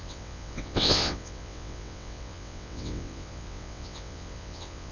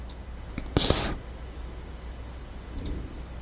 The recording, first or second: second